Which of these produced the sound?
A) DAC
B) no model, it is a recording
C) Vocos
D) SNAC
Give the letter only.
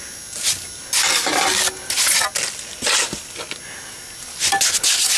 B